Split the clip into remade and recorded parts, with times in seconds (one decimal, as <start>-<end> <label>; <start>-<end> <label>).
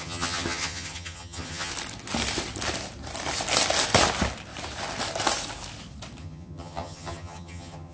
0.0-1.7 remade; 1.7-6.2 recorded; 6.2-7.9 remade